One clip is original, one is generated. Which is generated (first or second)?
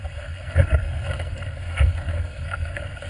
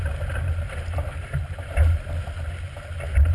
first